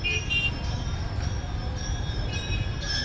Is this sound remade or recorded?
recorded